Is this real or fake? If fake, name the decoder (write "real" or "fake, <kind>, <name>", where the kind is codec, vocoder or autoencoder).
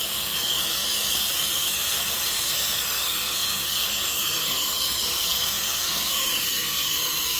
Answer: fake, codec, SNAC